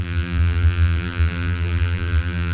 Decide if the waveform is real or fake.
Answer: fake